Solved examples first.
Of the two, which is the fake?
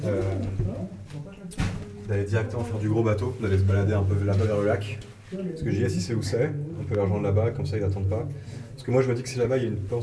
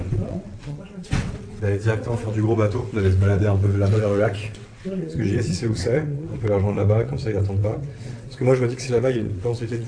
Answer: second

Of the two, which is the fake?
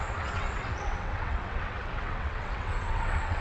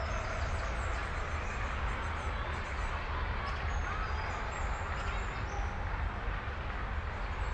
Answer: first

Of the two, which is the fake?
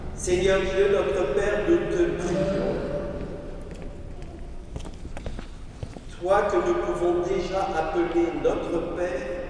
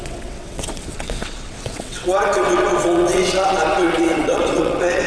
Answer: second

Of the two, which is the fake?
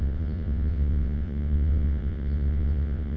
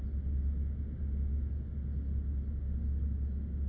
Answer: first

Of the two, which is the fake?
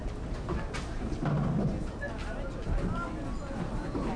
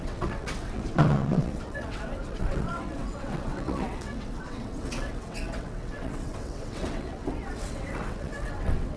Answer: second